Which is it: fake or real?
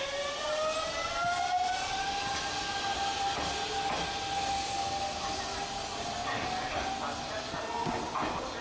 real